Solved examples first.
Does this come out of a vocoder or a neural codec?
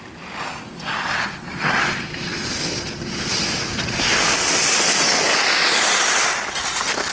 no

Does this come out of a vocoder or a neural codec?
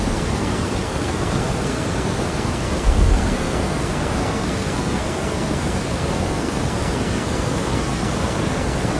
yes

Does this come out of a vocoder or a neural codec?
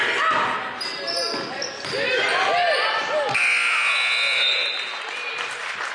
no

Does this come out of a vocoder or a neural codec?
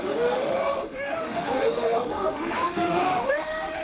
yes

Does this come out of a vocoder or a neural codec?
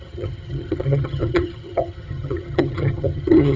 yes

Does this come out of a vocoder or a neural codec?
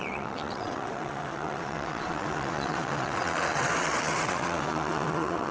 yes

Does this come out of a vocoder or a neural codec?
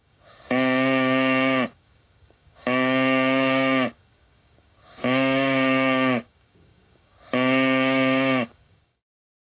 yes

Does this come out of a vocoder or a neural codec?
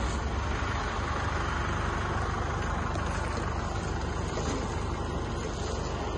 no